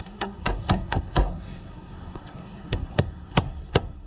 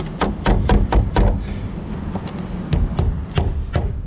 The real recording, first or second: second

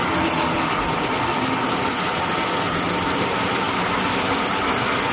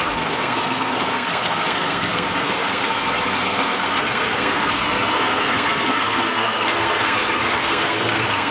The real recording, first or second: first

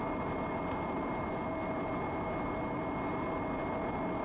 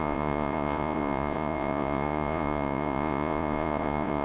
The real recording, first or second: first